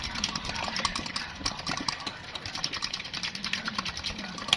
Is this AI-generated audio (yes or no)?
yes